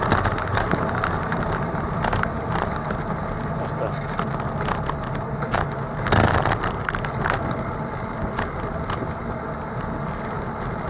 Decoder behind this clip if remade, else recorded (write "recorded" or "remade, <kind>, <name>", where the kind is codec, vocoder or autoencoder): recorded